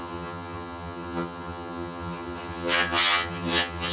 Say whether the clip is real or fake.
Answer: fake